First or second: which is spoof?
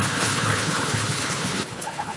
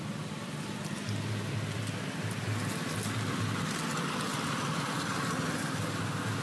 first